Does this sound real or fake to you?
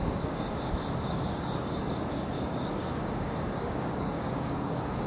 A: fake